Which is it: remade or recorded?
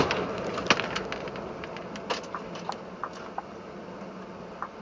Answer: recorded